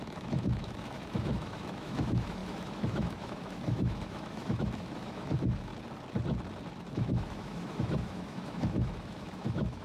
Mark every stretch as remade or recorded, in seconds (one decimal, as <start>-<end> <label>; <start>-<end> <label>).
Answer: 0.0-5.7 remade; 5.7-6.9 recorded; 6.9-9.8 remade

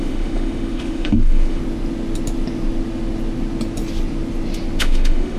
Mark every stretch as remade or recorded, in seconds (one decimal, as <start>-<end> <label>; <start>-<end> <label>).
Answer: 0.0-1.6 remade; 1.6-4.8 recorded; 4.8-5.4 remade

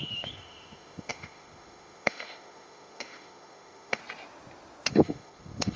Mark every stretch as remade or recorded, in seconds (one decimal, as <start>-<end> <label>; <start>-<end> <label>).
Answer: 0.0-4.0 remade; 4.0-4.9 recorded; 4.9-5.8 remade

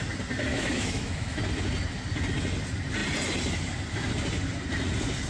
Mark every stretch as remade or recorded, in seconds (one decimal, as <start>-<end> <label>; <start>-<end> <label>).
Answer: 0.0-0.5 recorded; 0.5-1.4 remade; 1.4-5.3 recorded